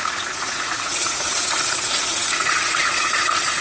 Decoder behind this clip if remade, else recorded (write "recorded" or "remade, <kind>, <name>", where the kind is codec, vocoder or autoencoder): remade, vocoder, Vocos